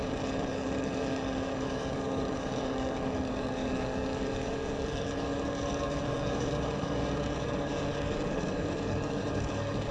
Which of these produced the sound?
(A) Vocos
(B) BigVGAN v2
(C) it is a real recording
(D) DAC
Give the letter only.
D